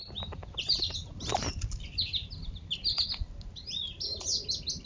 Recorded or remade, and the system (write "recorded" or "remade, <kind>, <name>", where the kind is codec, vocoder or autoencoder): recorded